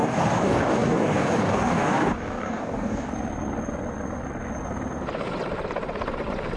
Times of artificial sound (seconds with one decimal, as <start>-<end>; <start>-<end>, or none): 0.0-3.1